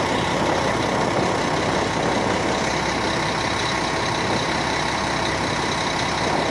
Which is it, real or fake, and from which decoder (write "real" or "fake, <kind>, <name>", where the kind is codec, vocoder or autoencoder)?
real